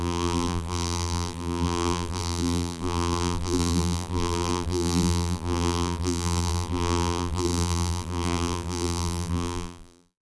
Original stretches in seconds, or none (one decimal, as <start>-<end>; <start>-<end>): none